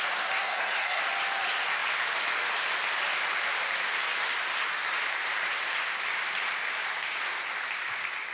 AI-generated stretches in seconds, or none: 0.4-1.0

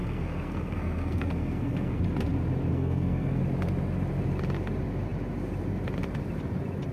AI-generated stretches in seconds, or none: 0.0-2.0; 2.7-3.4

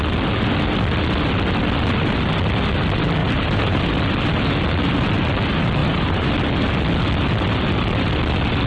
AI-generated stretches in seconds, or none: 3.2-3.8; 5.8-6.3

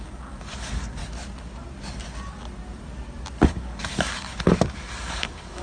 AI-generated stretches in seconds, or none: 0.0-1.0; 3.4-5.6

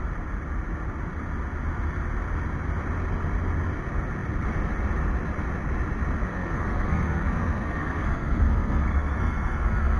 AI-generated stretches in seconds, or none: 6.3-10.0

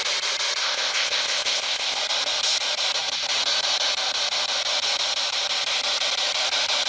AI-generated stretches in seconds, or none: 0.6-2.0

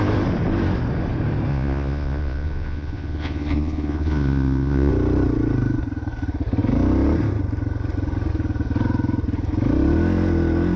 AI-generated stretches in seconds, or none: 1.5-4.9